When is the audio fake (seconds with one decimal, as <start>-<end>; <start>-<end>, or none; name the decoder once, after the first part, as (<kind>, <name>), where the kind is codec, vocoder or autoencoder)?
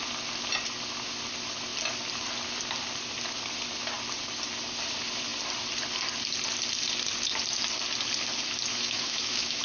8.7-9.6 (autoencoder, DAC-VAE)